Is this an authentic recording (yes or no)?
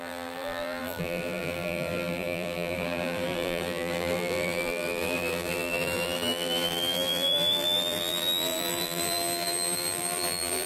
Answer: no